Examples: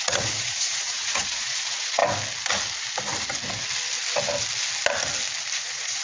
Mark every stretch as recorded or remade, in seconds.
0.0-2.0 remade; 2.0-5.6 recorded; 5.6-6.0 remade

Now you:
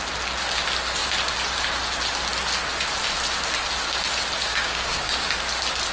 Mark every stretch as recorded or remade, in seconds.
0.0-4.5 recorded; 4.5-5.3 remade; 5.3-5.9 recorded

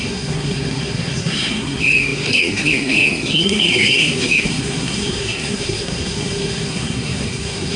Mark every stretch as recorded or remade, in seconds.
0.0-7.8 remade

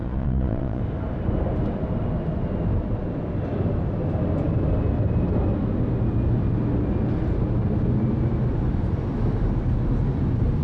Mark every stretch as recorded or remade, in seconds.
0.0-0.8 remade; 0.8-10.6 recorded

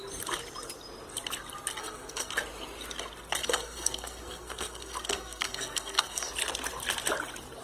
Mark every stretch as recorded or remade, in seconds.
0.0-1.8 recorded; 1.8-2.3 remade; 2.3-3.4 recorded; 3.4-6.3 remade; 6.3-7.6 recorded

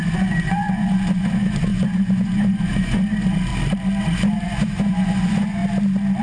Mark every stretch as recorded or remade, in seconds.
0.0-3.5 remade; 3.5-4.0 recorded; 4.0-5.6 remade; 5.6-6.2 recorded

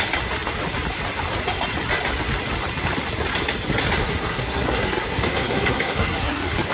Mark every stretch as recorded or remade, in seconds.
0.0-4.0 recorded; 4.0-6.7 remade